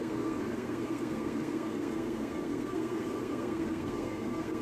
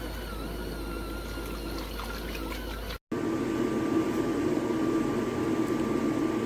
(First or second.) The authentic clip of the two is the second